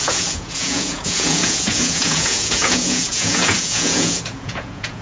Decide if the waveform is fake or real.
fake